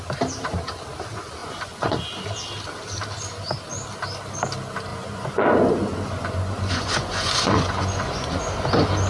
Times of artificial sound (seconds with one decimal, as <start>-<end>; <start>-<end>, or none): 1.4-2.0; 4.9-8.4